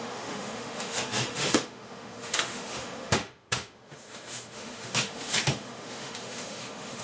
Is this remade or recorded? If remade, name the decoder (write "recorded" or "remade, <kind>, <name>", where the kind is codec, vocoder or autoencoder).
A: remade, autoencoder, DAC-VAE